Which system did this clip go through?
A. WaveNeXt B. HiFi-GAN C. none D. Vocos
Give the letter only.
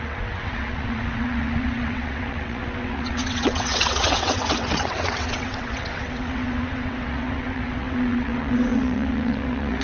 A